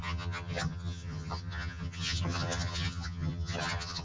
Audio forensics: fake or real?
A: fake